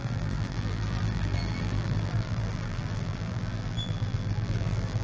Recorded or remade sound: remade